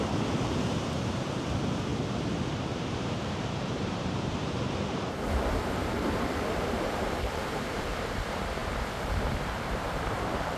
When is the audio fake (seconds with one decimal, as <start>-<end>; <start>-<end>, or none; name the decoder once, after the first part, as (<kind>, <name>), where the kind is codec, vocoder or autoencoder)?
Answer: 0.0-10.6 (vocoder, BigVGAN v2)